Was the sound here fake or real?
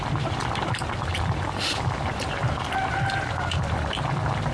fake